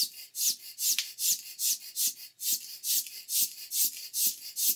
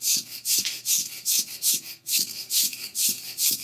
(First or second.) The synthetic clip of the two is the second